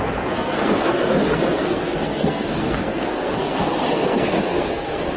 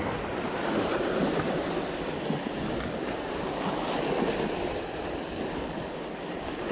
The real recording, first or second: second